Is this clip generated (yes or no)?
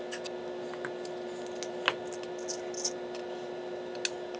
no